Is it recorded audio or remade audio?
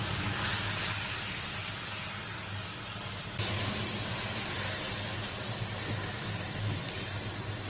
recorded